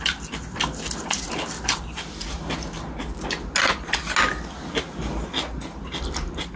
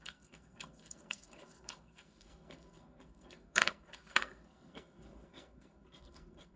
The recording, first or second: first